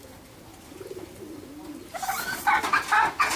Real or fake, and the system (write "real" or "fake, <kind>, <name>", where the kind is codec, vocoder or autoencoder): real